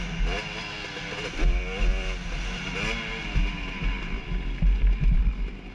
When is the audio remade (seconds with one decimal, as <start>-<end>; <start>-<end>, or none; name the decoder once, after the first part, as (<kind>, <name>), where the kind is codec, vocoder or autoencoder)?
none